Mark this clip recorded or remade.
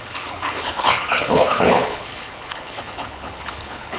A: remade